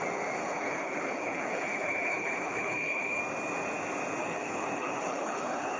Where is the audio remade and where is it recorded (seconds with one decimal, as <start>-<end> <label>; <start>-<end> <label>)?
0.0-0.4 recorded; 0.4-3.2 remade; 3.2-4.2 recorded; 4.2-5.8 remade